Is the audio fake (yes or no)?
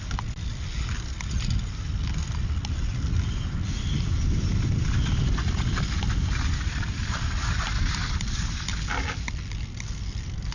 no